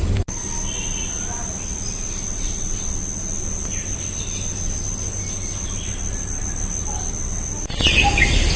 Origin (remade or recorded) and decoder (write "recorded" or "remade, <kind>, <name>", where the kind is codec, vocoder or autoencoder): recorded